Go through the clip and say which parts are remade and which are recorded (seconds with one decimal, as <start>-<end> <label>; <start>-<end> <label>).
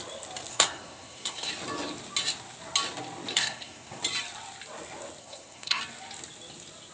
0.0-0.5 recorded; 0.5-1.5 remade; 1.5-3.3 recorded; 3.3-4.0 remade; 4.0-5.2 recorded; 5.2-5.8 remade; 5.8-6.9 recorded